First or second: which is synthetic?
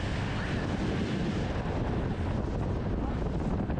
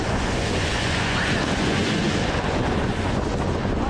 second